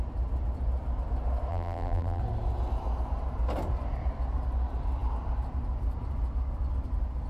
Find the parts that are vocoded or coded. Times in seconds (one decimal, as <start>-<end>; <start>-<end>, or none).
1.5-2.2